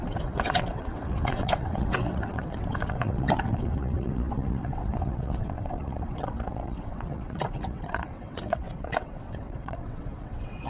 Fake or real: fake